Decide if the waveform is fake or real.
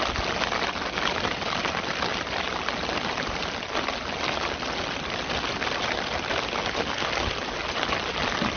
real